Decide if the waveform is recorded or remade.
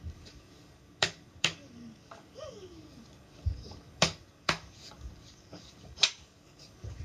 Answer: remade